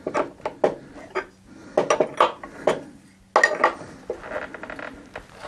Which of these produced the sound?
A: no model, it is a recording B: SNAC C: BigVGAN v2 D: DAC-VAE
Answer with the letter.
A